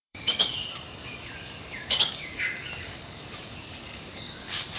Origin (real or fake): fake